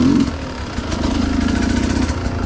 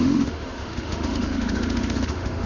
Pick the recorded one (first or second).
first